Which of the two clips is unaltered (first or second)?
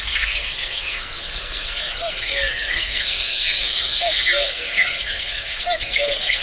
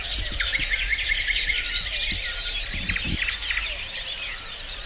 second